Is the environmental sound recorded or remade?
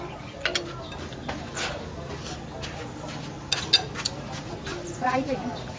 recorded